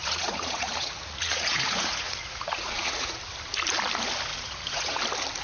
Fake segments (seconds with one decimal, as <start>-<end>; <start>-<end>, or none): 0.0-3.2; 4.3-5.0